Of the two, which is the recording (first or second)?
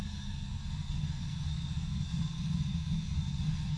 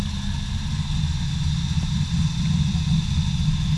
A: second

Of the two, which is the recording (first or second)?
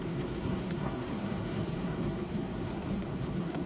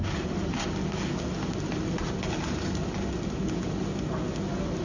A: second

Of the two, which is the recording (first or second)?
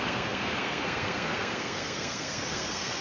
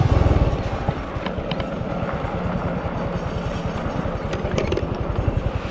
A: second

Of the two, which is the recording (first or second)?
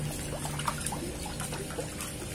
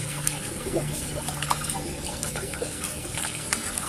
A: first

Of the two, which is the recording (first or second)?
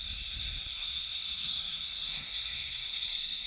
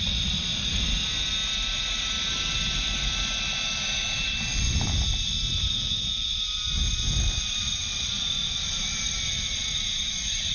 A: second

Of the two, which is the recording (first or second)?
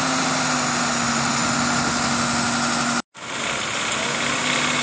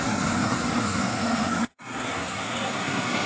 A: first